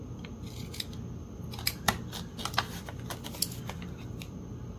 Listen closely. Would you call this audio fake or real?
real